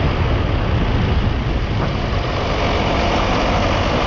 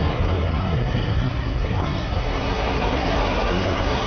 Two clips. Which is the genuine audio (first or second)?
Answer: first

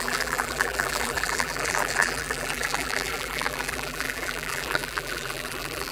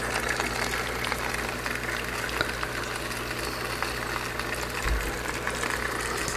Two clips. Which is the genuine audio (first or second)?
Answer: second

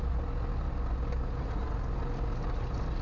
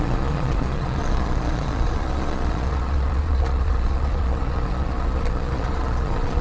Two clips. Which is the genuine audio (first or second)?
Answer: first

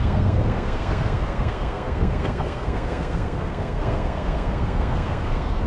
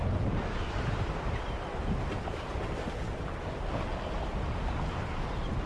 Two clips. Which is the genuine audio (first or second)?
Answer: second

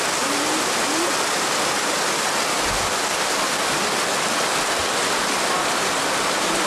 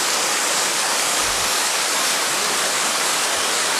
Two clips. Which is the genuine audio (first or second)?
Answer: first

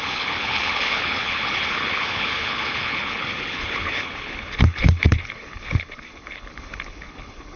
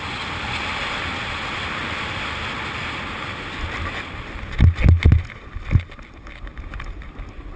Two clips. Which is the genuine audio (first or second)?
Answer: second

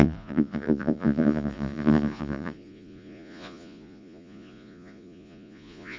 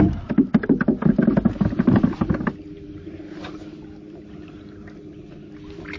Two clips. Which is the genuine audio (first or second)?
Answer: second